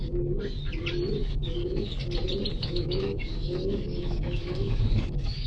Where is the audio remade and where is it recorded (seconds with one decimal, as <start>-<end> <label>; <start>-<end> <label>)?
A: 0.0-1.2 recorded; 1.2-2.0 remade; 2.0-2.5 recorded; 2.5-5.5 remade